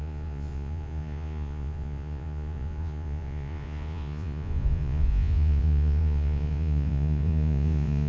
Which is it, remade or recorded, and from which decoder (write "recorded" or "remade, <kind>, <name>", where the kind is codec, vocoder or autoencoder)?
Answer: remade, vocoder, Vocos